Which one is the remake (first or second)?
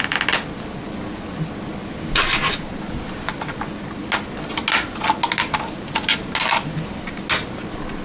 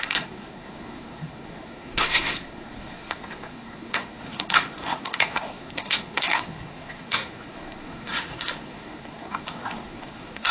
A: second